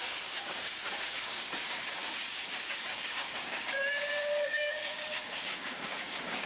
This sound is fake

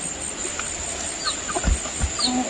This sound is real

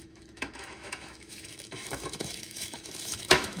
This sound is fake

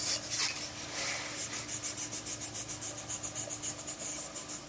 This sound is real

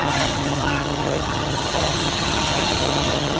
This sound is fake